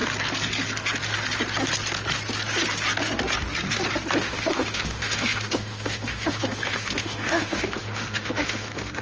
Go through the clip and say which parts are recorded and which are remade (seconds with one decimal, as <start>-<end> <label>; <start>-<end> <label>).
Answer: 0.0-4.2 recorded; 4.2-9.0 remade